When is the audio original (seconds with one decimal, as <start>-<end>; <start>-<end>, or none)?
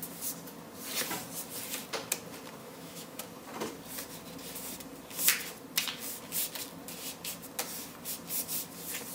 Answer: 0.0-2.6; 3.2-9.1